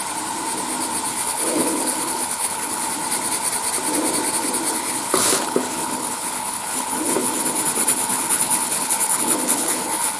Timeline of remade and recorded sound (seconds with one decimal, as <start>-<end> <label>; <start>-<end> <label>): 0.0-1.1 recorded; 1.1-2.9 remade; 2.9-4.7 recorded; 4.7-7.4 remade; 7.4-8.0 recorded; 8.0-10.2 remade